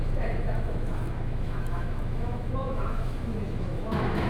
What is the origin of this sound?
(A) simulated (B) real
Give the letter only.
A